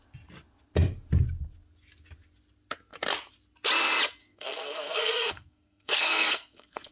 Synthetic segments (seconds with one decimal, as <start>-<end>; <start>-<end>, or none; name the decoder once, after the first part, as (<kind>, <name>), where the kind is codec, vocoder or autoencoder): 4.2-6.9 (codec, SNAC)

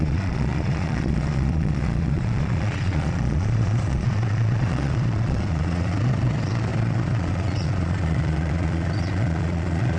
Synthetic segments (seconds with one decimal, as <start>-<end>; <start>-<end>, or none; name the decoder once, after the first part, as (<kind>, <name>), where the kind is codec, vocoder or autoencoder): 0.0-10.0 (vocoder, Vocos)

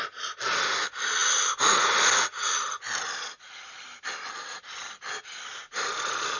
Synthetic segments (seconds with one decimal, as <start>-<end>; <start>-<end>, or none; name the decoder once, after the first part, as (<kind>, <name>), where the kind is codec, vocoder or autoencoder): none